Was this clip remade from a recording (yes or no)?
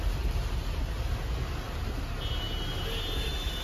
no